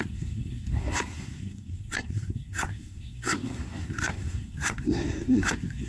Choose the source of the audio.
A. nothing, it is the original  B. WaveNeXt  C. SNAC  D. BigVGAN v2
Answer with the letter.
C